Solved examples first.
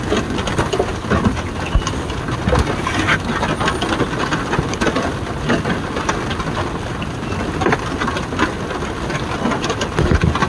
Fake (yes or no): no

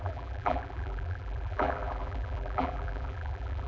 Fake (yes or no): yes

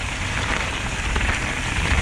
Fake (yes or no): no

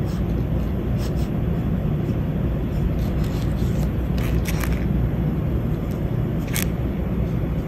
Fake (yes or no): no